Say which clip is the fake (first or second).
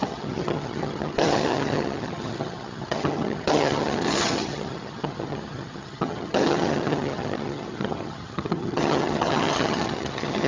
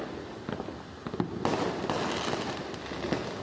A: first